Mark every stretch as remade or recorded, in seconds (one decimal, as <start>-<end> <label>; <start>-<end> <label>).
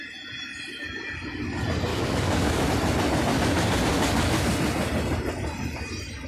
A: 0.0-1.9 recorded; 1.9-2.7 remade; 2.7-3.9 recorded; 3.9-4.5 remade; 4.5-6.3 recorded